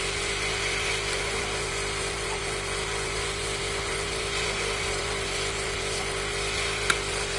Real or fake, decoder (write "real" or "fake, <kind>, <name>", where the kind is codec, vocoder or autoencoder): real